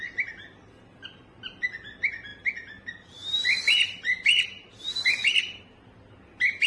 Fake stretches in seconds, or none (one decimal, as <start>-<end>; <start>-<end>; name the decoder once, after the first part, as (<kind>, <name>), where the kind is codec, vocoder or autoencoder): none